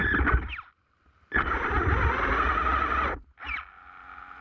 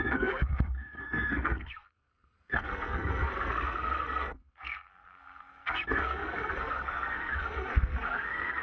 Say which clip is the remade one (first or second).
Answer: second